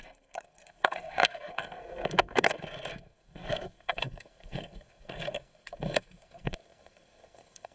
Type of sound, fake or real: fake